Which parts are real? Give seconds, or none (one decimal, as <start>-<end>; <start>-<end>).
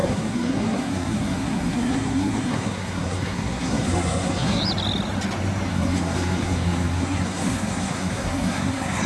4.6-5.7